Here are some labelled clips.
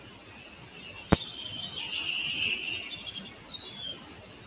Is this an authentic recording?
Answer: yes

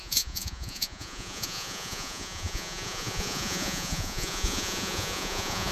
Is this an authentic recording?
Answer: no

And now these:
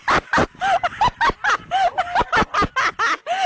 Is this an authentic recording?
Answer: yes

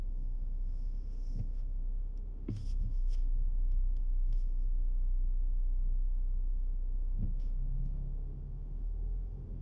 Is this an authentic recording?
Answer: no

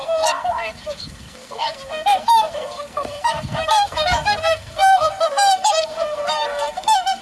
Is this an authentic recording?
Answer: no